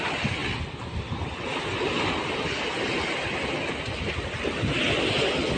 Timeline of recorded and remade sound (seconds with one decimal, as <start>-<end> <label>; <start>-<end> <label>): 0.0-5.6 recorded